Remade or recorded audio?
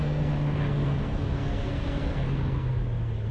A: remade